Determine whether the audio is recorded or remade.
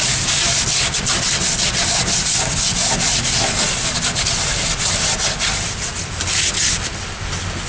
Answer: recorded